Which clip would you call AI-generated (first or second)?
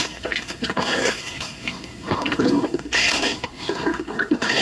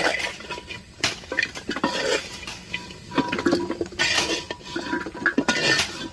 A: first